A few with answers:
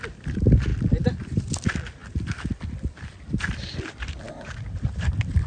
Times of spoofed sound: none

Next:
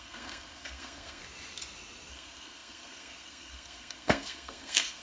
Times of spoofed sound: 0.0-1.2 (codec, SNAC); 2.1-5.0